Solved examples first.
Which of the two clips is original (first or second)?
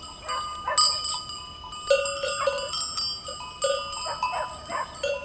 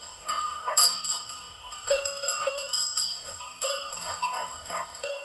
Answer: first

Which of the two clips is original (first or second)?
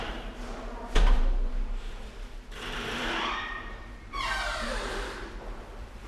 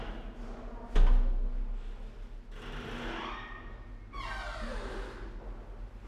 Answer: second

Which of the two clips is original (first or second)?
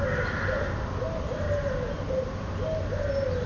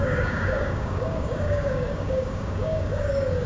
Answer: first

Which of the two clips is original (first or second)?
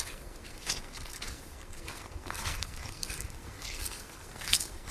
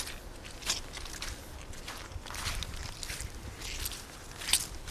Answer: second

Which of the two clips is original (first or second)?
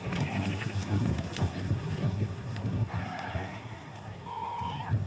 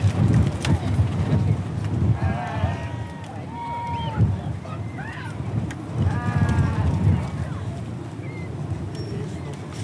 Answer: second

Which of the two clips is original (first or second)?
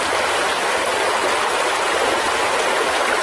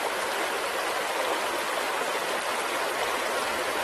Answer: second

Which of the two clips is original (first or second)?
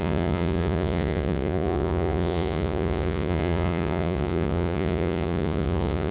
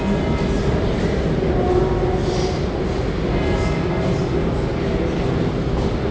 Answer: second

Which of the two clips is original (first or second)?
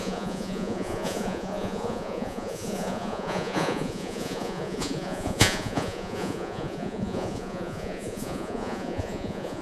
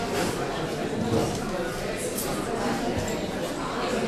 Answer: second